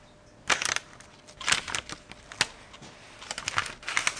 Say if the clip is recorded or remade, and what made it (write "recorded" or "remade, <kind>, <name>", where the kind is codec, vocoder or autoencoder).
recorded